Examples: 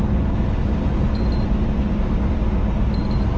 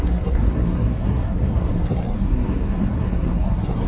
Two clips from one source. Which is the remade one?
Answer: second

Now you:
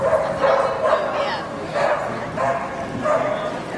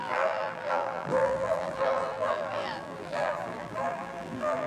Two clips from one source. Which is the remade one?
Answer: second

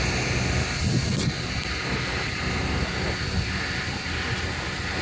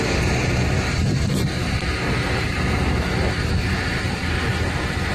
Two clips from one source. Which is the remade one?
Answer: second